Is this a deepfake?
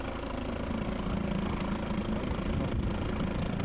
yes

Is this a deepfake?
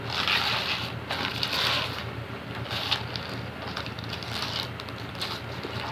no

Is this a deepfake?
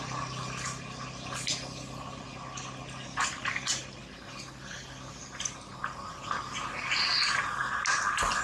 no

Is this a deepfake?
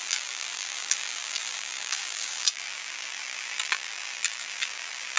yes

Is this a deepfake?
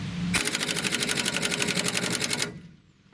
no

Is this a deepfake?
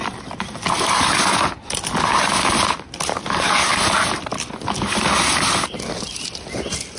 yes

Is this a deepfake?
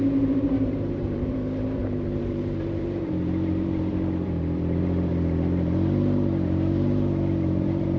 yes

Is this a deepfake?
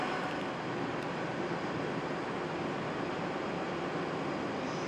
no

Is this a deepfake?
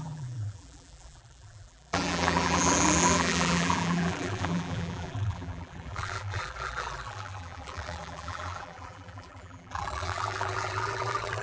yes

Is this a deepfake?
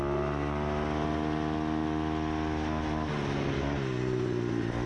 no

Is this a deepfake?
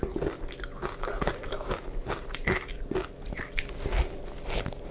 no